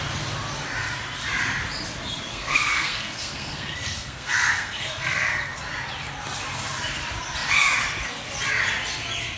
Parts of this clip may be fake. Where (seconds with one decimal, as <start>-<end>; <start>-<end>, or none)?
2.3-5.6